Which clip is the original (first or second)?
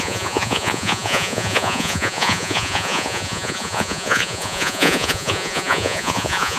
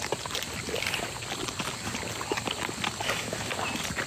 second